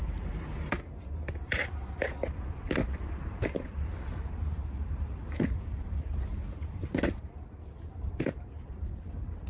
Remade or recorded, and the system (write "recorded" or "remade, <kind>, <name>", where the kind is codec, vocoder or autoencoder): remade, vocoder, BigVGAN v2